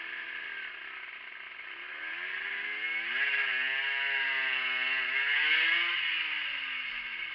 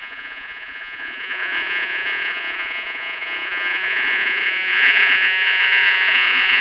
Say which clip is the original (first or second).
first